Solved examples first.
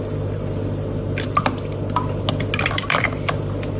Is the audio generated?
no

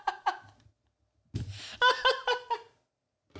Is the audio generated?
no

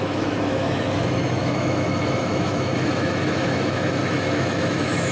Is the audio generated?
yes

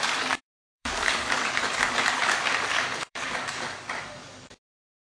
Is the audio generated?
yes